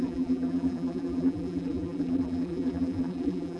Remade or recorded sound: remade